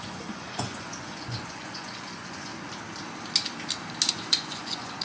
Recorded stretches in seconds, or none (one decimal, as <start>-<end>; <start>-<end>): 2.5-4.1